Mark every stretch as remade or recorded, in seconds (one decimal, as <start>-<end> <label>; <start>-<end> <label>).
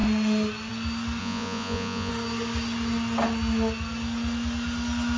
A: 0.0-1.2 recorded; 1.2-2.1 remade; 2.1-5.2 recorded